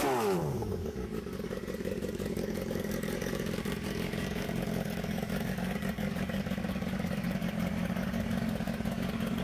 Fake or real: fake